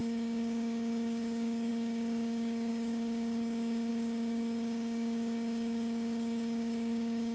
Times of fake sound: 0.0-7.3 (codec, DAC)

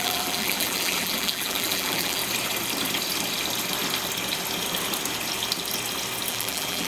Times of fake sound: 0.0-2.2 (vocoder, BigVGAN v2); 6.3-6.9

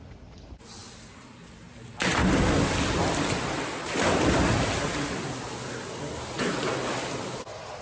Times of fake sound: none

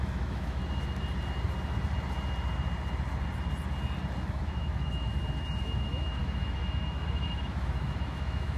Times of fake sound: 0.0-0.6 (autoencoder, DAC-VAE); 4.3-5.1; 5.6-8.6

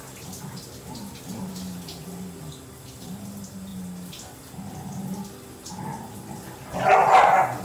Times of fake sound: none

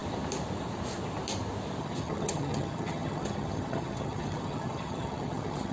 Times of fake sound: 1.8-5.7 (vocoder, HiFi-GAN)

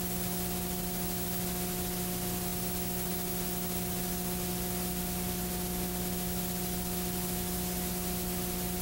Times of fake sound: none